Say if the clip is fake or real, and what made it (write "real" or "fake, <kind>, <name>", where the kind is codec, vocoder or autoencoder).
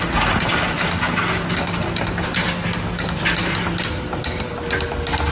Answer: real